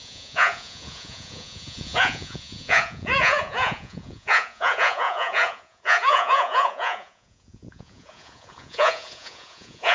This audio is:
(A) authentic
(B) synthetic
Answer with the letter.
B